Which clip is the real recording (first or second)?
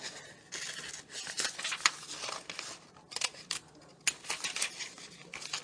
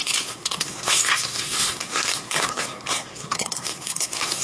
first